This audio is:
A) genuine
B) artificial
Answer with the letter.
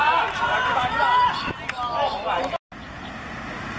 A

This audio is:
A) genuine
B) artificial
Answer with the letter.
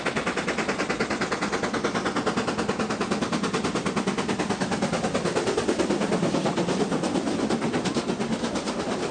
A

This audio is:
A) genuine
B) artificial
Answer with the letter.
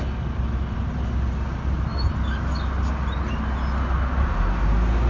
A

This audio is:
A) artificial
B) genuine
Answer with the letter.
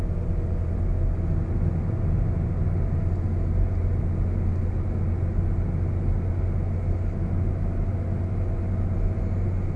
B